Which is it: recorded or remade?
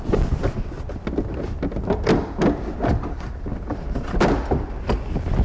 recorded